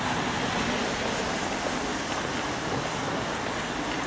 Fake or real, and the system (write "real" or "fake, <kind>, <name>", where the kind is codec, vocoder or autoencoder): real